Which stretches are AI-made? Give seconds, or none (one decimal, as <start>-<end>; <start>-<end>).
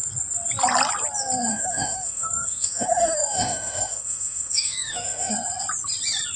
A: 1.5-5.3